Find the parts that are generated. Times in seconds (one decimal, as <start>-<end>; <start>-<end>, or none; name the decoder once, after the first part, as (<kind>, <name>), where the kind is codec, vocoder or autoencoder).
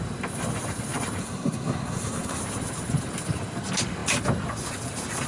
1.2-2.4 (codec, SNAC)